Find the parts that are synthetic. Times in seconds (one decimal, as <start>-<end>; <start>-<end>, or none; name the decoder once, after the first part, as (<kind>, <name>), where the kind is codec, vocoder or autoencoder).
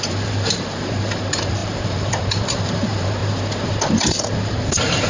0.0-3.2 (vocoder, BigVGAN v2); 4.2-5.1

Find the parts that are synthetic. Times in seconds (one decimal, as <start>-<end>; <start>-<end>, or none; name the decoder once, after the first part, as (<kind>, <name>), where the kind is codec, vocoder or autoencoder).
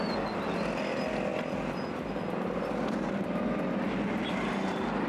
none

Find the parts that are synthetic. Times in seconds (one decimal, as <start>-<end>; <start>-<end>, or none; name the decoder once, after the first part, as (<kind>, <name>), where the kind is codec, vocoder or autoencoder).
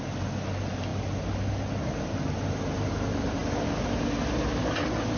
none